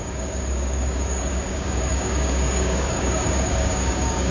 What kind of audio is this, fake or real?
fake